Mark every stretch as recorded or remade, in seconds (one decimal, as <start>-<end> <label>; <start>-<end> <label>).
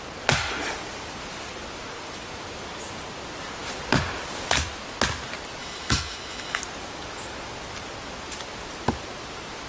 0.0-5.6 recorded; 5.6-6.6 remade; 6.6-9.7 recorded